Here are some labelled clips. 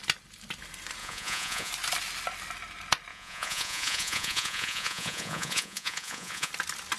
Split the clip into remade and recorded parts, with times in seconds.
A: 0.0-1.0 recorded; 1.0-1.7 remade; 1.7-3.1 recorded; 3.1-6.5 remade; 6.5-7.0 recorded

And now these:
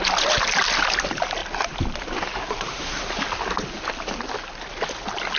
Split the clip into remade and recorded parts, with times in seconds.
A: 0.0-5.4 recorded